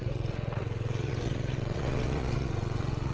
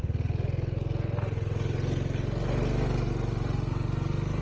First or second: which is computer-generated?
first